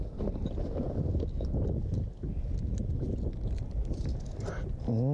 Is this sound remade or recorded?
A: recorded